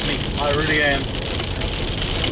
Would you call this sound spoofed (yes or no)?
no